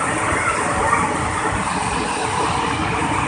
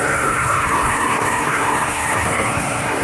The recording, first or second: first